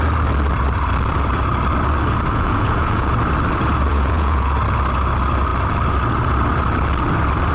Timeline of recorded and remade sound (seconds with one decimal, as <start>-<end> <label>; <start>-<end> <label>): 0.0-2.3 recorded; 2.3-3.1 remade; 3.1-3.9 recorded; 3.9-4.6 remade; 4.6-7.5 recorded

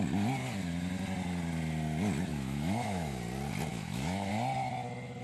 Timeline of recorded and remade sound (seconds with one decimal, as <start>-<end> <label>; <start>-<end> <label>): 0.0-2.3 recorded; 2.3-3.2 remade; 3.2-3.7 recorded; 3.7-4.3 remade; 4.3-5.2 recorded

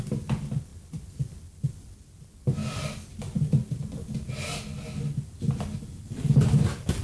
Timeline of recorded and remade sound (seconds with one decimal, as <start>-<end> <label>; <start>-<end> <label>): 0.0-7.0 recorded

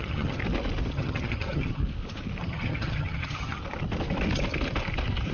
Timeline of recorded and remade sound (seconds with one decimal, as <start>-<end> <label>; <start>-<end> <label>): 0.0-0.4 remade; 0.4-0.9 recorded; 0.9-1.8 remade; 1.8-2.4 recorded; 2.4-3.6 remade; 3.6-5.3 recorded

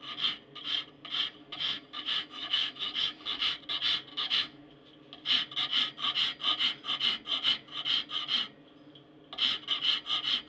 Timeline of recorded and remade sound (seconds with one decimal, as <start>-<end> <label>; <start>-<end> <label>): 0.0-1.4 recorded; 1.4-3.5 remade; 3.5-4.1 recorded; 4.1-4.7 remade; 4.7-10.5 recorded

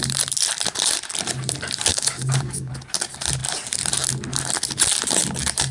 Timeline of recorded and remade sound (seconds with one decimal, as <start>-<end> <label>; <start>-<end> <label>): 0.0-1.9 recorded; 1.9-2.7 remade; 2.7-5.7 recorded

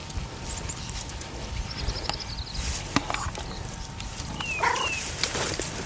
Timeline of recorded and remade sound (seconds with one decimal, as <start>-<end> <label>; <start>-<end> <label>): 0.0-3.5 recorded; 3.5-5.9 remade